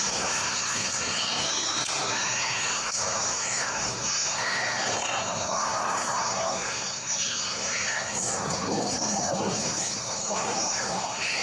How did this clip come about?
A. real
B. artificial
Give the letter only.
B